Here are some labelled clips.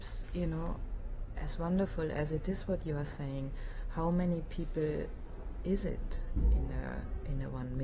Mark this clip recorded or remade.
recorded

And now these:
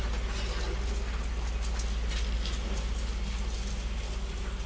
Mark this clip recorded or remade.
recorded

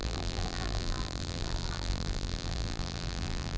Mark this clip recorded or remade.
remade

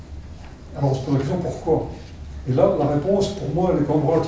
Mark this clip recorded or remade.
recorded